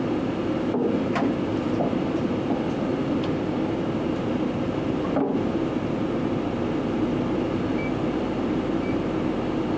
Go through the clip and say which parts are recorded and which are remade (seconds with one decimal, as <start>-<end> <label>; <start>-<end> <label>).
0.0-9.8 recorded